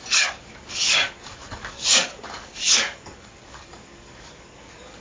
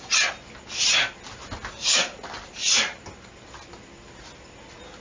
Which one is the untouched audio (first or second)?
second